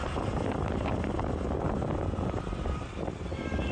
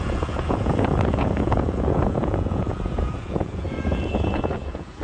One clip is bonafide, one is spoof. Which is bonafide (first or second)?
first